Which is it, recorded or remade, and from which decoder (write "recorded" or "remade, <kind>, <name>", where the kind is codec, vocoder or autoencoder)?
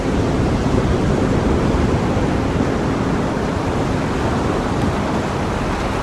recorded